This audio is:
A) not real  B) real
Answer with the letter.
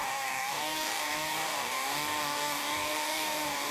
A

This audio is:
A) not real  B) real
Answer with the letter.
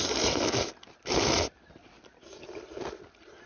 B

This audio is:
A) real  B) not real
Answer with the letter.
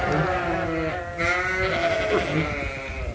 A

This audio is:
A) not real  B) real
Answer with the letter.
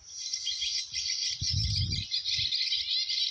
B